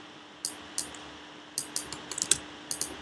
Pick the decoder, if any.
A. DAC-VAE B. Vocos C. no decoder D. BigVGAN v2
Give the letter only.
C